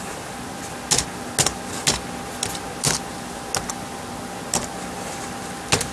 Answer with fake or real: real